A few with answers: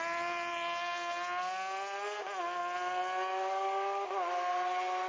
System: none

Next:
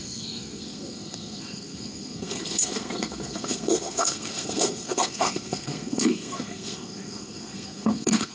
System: codec, SNAC